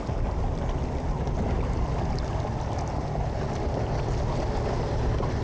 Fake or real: real